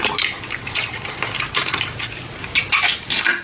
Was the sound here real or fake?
real